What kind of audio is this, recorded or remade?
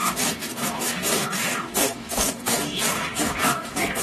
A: remade